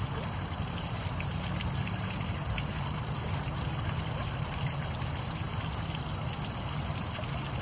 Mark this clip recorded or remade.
recorded